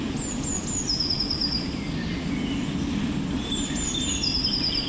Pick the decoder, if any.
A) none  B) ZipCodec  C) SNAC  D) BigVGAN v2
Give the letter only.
A